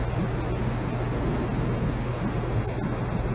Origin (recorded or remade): recorded